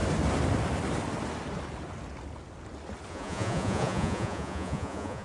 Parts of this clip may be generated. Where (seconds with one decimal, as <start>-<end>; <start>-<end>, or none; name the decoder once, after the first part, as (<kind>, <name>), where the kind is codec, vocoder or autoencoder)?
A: 3.1-5.2 (vocoder, Vocos)